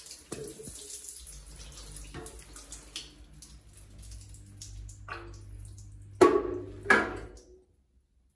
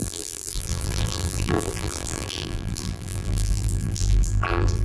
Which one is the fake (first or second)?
second